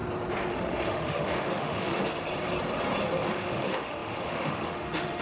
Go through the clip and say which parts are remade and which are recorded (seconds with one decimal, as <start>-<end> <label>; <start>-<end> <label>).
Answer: 0.0-0.5 recorded; 0.5-2.0 remade; 2.0-3.3 recorded; 3.3-5.2 remade